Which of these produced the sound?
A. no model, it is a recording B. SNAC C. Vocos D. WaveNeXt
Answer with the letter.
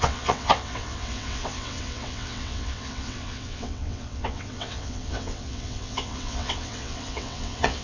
D